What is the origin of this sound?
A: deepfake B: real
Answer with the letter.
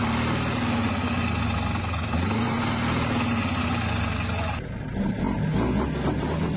B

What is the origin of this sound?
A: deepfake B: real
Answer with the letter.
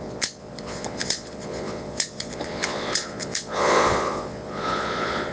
A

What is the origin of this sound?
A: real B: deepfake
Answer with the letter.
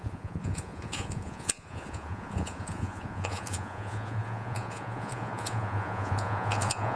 B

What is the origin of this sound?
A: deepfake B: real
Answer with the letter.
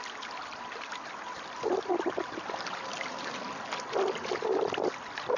B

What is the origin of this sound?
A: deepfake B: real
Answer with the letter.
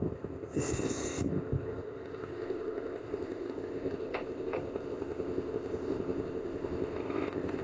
A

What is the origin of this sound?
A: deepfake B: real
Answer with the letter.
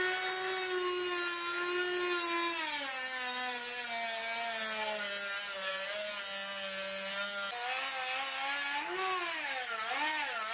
B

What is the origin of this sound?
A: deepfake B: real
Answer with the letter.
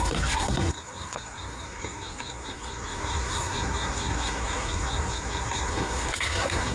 A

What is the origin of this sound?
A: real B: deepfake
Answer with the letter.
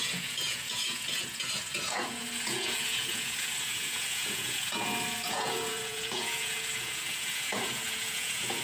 B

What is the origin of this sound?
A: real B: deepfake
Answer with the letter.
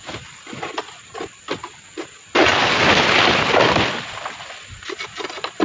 A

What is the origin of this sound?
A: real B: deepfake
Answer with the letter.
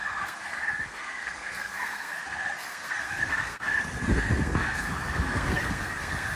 B